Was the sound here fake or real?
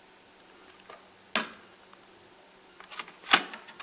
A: real